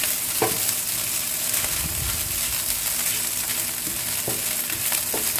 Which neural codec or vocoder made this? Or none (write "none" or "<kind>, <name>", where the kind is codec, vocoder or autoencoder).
none